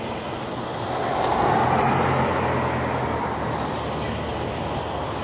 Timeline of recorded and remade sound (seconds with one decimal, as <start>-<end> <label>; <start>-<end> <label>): 0.0-0.7 recorded; 0.7-1.8 remade; 1.8-4.3 recorded; 4.3-4.8 remade; 4.8-5.2 recorded